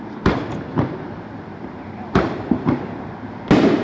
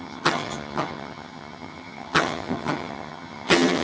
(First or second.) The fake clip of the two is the second